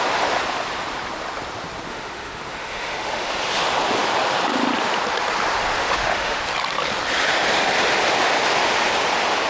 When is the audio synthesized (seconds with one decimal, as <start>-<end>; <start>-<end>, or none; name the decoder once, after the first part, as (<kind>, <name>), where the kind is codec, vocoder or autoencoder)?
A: 1.9-3.3 (autoencoder, DAC-VAE); 5.8-6.4